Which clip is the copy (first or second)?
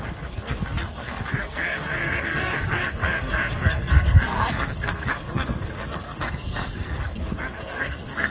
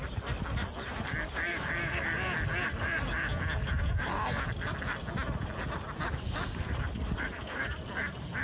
first